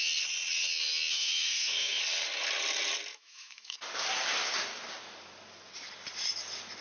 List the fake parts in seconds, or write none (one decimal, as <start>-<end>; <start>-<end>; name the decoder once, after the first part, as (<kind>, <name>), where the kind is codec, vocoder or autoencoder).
1.1-2.0 (autoencoder, DAC-VAE); 3.1-3.8